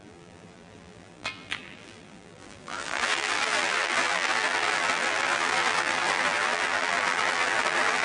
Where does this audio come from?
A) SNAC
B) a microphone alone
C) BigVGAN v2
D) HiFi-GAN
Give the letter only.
C